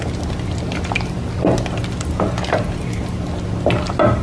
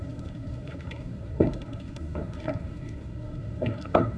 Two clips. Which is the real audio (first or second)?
first